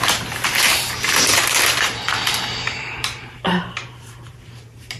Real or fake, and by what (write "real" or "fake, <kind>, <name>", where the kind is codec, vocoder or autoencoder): fake, vocoder, BigVGAN v2